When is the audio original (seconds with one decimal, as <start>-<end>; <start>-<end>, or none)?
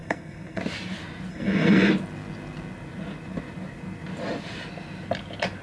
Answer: 0.6-1.3; 1.9-5.6